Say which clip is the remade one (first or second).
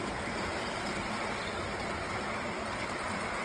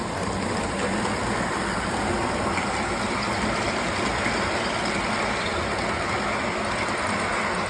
first